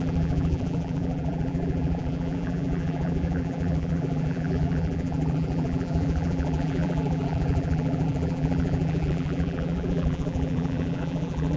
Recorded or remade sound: remade